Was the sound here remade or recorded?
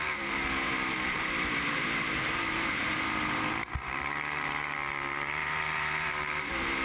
remade